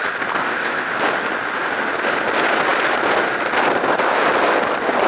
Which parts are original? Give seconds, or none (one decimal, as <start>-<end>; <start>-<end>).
0.0-0.4; 0.9-5.1